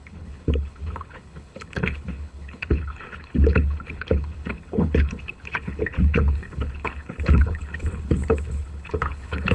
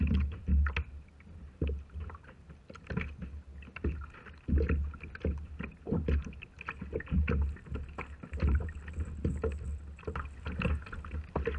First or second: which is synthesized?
first